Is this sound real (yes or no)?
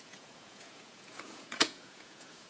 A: no